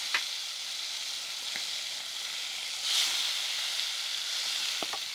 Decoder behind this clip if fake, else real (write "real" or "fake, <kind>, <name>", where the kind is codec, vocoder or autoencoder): real